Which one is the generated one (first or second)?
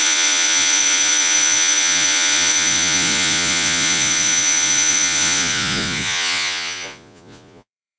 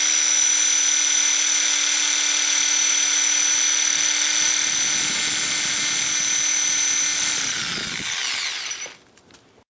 first